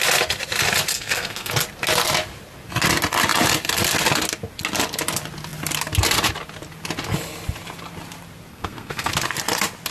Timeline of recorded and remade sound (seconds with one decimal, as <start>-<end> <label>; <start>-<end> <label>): 0.0-0.9 recorded; 0.9-1.5 remade; 1.5-8.5 recorded; 8.5-9.1 remade; 9.1-9.9 recorded